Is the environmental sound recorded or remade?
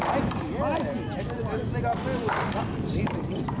recorded